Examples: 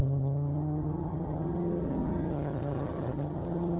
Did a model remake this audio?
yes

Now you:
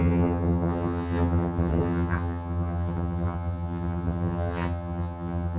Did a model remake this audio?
yes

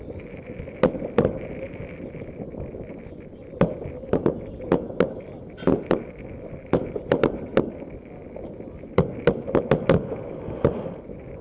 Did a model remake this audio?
no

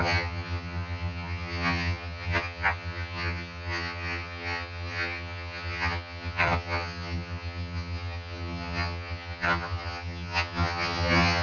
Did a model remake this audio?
yes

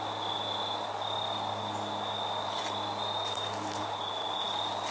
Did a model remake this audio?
no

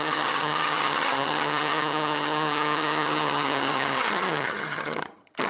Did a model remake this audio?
yes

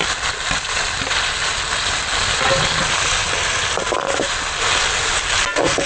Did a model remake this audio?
no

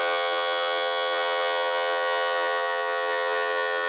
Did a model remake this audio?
yes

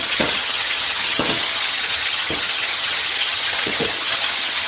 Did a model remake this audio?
yes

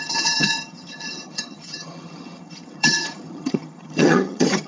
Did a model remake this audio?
yes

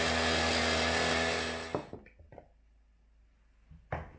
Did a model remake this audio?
no